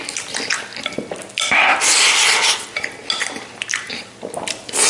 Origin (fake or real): real